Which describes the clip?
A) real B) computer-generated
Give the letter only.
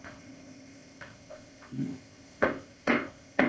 B